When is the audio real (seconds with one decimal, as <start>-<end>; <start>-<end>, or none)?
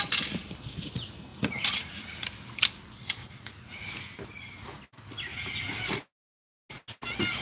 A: 0.0-1.3; 2.1-3.2; 3.9-5.3; 5.8-7.4